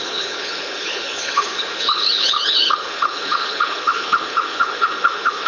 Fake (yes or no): yes